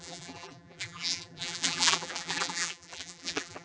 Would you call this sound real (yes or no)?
no